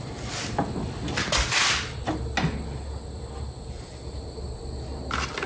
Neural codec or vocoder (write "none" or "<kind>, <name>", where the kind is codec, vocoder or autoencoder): none